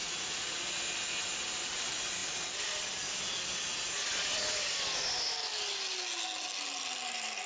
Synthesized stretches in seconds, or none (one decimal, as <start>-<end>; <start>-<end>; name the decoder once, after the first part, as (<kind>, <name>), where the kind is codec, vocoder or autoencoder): 0.0-0.8 (vocoder, Vocos)